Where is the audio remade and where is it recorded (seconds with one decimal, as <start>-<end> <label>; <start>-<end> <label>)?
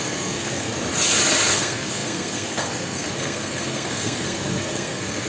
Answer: 0.0-0.7 remade; 0.7-1.5 recorded; 1.5-5.3 remade